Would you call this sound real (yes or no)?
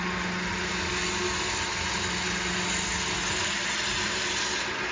yes